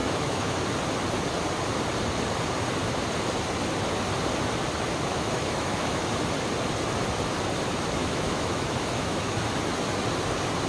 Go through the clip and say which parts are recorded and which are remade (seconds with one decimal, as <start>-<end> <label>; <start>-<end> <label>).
0.0-0.6 remade; 0.6-5.1 recorded; 5.1-6.1 remade; 6.1-8.0 recorded; 8.0-9.4 remade; 9.4-10.7 recorded